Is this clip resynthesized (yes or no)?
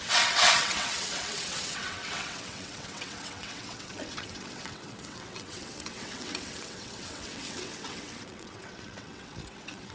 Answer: yes